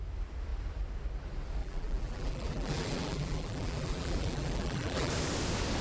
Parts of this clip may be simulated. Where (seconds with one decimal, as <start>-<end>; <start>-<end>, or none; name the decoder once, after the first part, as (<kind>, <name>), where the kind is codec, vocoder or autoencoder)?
1.6-5.1 (vocoder, BigVGAN v2)